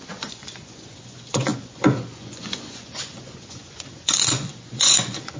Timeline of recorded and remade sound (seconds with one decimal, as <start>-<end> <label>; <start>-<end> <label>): 0.0-5.4 remade